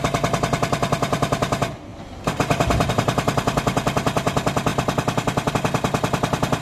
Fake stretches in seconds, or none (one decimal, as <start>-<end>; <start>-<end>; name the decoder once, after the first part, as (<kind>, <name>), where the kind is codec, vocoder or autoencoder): 1.9-2.9 (vocoder, BigVGAN v2)